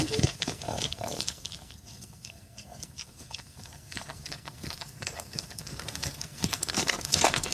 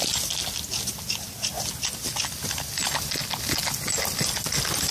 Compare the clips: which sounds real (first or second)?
second